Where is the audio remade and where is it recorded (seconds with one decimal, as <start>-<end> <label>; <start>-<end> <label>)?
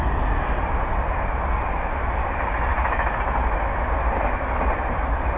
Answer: 0.0-2.7 recorded; 2.7-3.2 remade; 3.2-5.4 recorded